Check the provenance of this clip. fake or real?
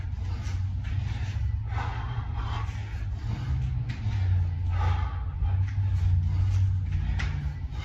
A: real